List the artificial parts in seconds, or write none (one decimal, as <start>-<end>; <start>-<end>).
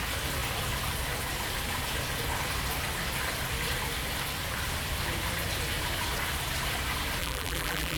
7.2-8.0